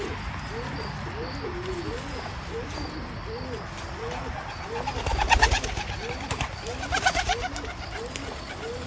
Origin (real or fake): real